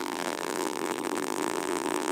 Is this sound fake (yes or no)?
yes